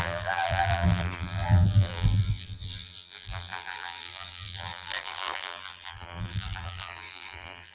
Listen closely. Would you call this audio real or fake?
fake